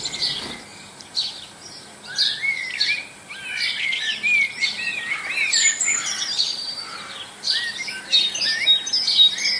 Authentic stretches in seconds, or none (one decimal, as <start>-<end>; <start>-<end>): 0.0-9.6

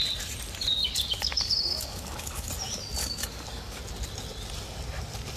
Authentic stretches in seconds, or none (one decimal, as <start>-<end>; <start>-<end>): 0.0-0.8; 2.5-3.0; 3.8-5.4

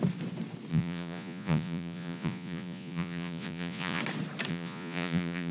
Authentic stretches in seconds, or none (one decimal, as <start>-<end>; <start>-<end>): 0.0-0.7; 4.0-4.5

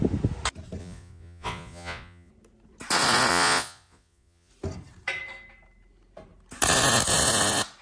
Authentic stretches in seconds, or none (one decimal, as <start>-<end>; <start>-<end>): 0.0-0.8; 2.3-3.3; 4.5-7.8

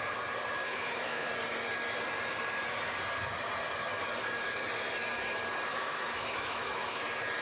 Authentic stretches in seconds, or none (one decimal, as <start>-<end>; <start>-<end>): 0.0-0.6; 1.3-5.7; 7.0-7.4

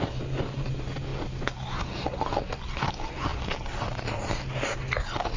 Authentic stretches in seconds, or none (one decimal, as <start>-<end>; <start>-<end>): 0.0-5.4